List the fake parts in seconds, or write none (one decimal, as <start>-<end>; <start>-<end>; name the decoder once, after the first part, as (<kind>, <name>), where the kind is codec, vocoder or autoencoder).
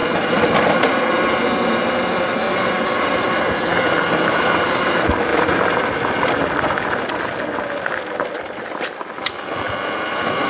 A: 0.0-0.8 (vocoder, BigVGAN v2)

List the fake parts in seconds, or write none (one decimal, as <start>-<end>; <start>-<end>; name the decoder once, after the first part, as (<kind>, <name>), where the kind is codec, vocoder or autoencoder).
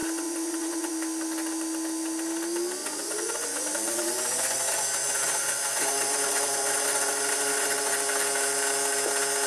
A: 0.0-0.9 (vocoder, Vocos); 2.8-7.9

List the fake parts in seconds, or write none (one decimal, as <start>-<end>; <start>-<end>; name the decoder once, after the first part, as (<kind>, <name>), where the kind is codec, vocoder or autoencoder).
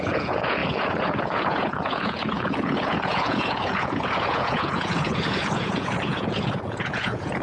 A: 0.0-7.4 (vocoder, Vocos)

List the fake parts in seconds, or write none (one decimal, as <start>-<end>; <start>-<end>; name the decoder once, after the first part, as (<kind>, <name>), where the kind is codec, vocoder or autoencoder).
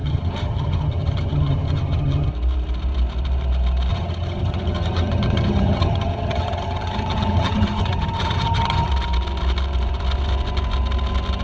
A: 0.0-2.3 (vocoder, HiFi-GAN); 3.9-8.9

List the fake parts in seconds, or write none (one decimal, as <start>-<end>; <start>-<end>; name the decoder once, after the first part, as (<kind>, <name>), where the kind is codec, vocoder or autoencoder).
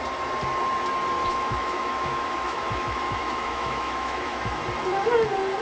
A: 1.2-4.6 (autoencoder, DAC-VAE)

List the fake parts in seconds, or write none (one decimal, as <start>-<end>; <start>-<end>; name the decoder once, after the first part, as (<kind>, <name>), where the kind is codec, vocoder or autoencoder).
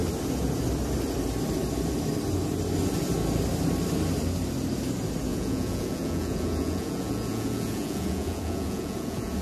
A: 5.3-9.4 (vocoder, Vocos)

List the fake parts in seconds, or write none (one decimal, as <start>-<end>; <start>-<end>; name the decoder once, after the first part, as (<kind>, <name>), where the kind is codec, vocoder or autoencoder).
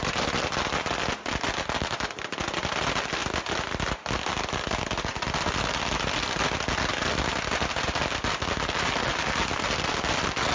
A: none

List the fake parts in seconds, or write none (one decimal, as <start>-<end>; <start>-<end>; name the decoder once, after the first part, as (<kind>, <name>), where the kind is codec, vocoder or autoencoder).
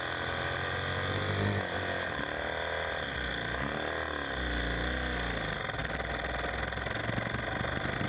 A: none